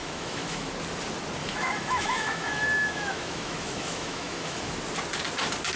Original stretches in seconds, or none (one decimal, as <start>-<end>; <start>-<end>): 0.7-1.4; 4.7-5.8